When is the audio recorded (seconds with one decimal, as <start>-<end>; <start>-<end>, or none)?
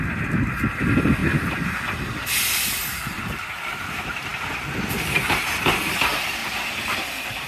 1.2-2.0; 4.3-5.8; 6.4-7.0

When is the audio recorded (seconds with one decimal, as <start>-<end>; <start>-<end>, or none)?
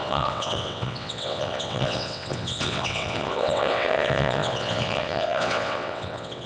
none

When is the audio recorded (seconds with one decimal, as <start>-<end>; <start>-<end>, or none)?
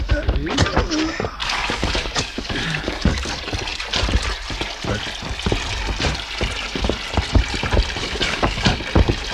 0.0-1.4; 3.3-8.0; 8.8-9.3